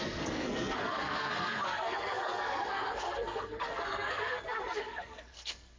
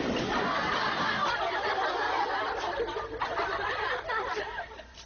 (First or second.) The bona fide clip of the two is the second